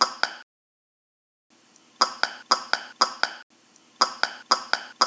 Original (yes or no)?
yes